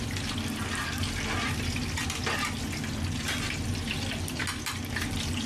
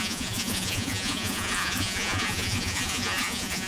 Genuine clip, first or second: first